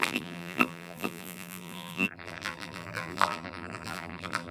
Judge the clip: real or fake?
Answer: fake